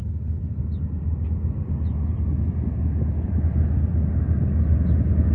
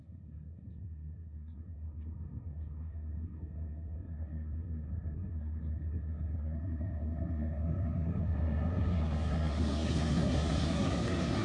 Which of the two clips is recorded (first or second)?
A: first